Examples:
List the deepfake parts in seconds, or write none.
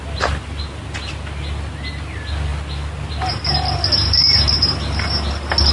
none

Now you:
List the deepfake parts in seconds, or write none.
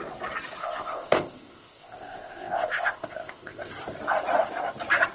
0.6-3.7 (codec, ZipCodec)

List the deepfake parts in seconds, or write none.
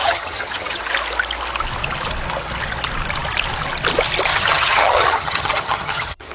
0.0-0.8 (vocoder, HiFi-GAN); 4.3-6.3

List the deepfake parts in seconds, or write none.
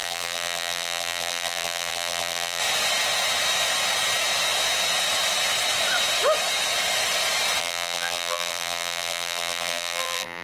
0.0-2.6 (vocoder, BigVGAN v2); 7.6-10.4